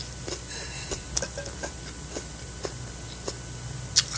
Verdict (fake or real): real